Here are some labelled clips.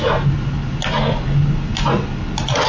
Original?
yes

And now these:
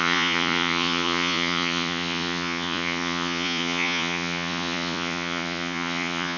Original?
no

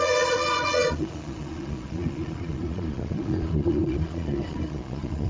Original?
no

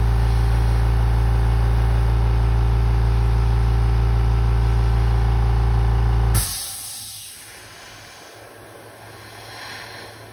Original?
yes